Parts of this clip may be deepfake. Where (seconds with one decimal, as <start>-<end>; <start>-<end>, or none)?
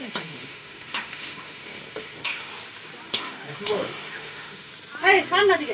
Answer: 0.0-2.5; 3.1-4.7